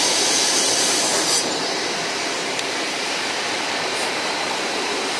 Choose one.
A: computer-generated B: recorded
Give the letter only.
A